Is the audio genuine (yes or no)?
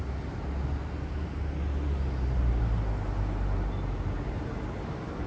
yes